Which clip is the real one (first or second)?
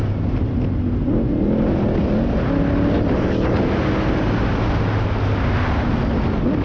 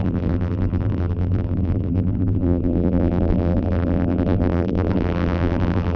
first